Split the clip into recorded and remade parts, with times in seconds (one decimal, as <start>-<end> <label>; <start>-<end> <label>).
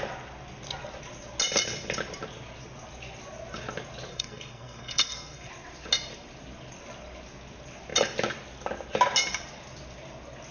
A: 0.0-4.1 recorded; 4.1-5.5 remade; 5.5-10.5 recorded